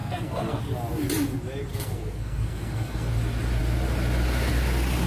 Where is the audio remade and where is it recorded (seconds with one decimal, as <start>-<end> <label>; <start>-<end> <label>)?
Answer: 0.0-0.6 remade; 0.6-1.7 recorded; 1.7-3.1 remade; 3.1-5.1 recorded